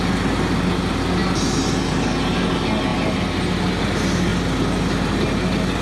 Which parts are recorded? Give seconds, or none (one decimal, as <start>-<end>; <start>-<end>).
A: 0.0-5.8